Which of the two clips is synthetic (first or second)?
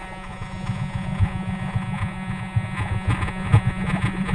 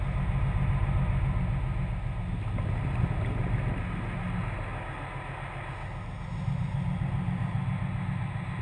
first